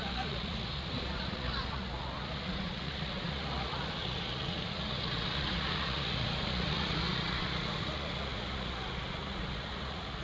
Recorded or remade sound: remade